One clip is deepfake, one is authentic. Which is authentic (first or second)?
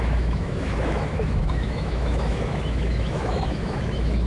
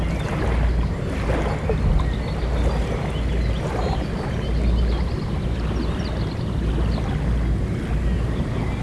second